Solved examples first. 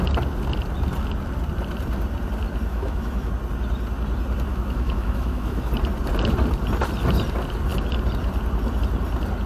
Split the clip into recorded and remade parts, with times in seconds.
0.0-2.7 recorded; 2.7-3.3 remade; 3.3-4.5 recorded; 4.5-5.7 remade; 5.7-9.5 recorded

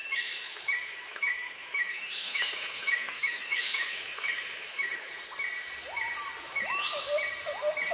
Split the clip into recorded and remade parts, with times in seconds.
0.0-5.1 remade; 5.1-6.4 recorded; 6.4-7.1 remade; 7.1-7.9 recorded

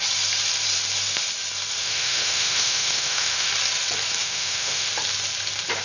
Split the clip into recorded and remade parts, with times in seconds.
0.0-1.8 recorded; 1.8-3.5 remade; 3.5-4.2 recorded; 4.2-4.9 remade; 4.9-5.8 recorded